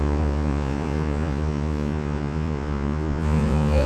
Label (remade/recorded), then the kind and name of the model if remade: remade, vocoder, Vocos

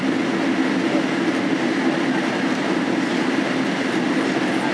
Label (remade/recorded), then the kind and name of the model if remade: recorded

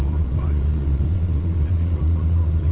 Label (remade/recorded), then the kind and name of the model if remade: remade, vocoder, Vocos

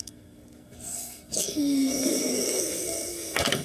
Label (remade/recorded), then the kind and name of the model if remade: remade, codec, SNAC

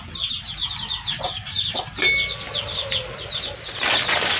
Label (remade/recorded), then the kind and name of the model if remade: recorded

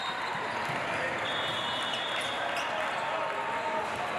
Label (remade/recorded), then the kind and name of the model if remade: recorded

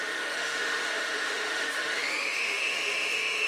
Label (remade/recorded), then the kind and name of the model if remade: remade, autoencoder, DAC-VAE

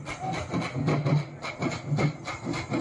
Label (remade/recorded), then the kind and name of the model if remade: recorded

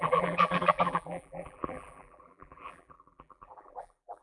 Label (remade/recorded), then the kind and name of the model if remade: remade, vocoder, BigVGAN v2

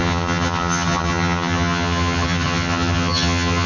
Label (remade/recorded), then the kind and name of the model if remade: remade, vocoder, HiFi-GAN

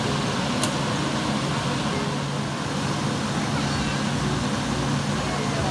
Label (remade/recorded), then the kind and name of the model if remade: recorded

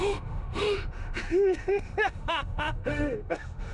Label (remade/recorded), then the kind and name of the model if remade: remade, autoencoder, DAC-VAE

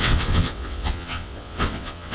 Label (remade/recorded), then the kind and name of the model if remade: remade, vocoder, WaveNeXt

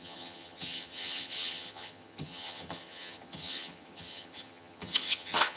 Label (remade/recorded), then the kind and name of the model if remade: remade, vocoder, HiFi-GAN